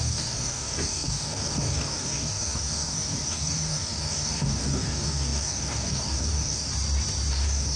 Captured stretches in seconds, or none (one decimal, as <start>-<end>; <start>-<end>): 6.7-7.3